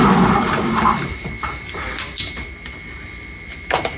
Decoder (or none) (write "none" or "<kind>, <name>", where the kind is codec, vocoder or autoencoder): none